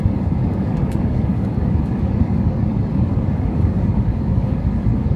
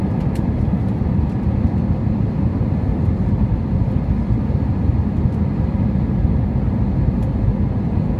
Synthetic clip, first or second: first